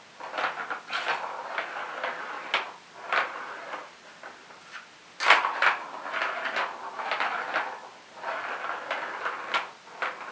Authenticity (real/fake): real